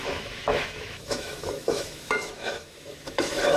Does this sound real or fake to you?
fake